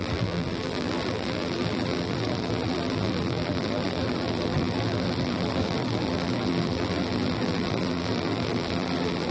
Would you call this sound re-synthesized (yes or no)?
yes